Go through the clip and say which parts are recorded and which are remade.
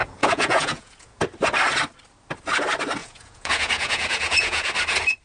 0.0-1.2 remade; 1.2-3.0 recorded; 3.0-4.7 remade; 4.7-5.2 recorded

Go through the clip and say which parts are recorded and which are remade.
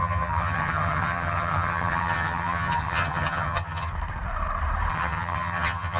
0.0-3.9 remade; 3.9-4.9 recorded; 4.9-6.0 remade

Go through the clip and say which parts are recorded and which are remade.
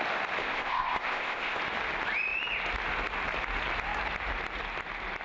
0.0-0.4 recorded; 0.4-1.6 remade; 1.6-5.2 recorded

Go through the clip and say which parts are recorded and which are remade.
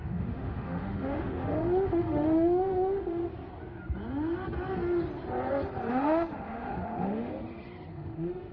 0.0-3.2 remade; 3.2-5.9 recorded; 5.9-7.3 remade; 7.3-7.9 recorded; 7.9-8.5 remade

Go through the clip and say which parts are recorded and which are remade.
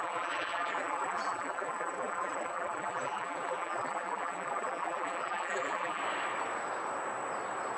0.0-6.0 remade; 6.0-7.8 recorded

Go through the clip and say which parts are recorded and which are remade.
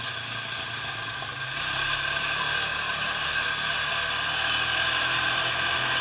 0.0-6.0 recorded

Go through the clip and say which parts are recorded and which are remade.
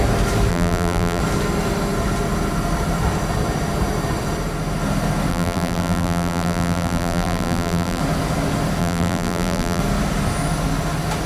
0.0-0.5 recorded; 0.5-1.2 remade; 1.2-5.3 recorded; 5.3-8.0 remade; 8.0-8.8 recorded; 8.8-9.8 remade; 9.8-11.3 recorded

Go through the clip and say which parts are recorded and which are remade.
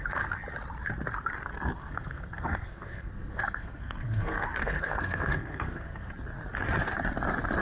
0.0-1.8 recorded; 1.8-6.1 remade; 6.1-7.6 recorded